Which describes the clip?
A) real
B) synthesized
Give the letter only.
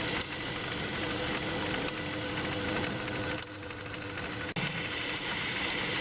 A